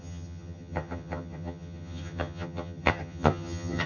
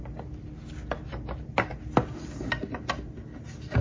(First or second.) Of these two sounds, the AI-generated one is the first